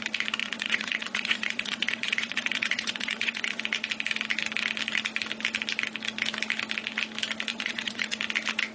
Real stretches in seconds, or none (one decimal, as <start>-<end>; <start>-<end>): 0.0-0.4; 3.6-7.5; 8.2-8.7